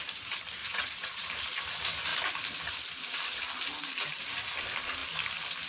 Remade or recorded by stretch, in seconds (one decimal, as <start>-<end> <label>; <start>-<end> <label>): 0.0-0.6 recorded; 0.6-1.3 remade; 1.3-5.7 recorded